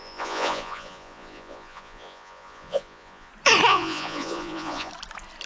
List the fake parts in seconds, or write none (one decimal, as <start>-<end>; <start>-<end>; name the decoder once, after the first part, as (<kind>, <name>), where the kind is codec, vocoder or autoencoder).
0.0-3.3 (vocoder, Vocos); 3.7-4.9